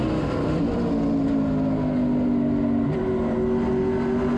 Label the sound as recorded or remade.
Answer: recorded